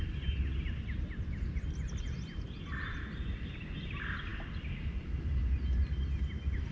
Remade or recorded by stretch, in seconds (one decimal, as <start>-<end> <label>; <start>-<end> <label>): 0.0-6.7 recorded